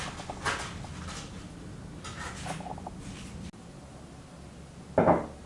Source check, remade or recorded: recorded